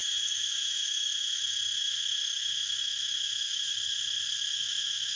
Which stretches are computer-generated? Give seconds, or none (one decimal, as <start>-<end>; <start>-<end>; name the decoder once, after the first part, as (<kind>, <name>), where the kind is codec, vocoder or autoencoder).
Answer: 0.0-1.4 (autoencoder, DAC-VAE); 1.8-5.2